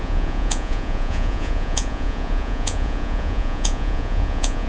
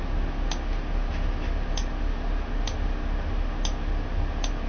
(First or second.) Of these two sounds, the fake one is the first